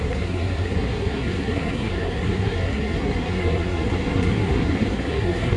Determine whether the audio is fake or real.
fake